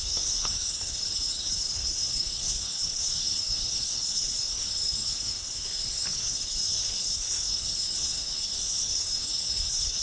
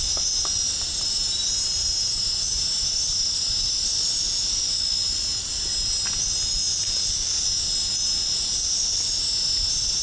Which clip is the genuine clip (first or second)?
second